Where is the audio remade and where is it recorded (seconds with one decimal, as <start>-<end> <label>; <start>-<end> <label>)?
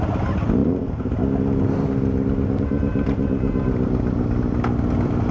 0.0-5.3 recorded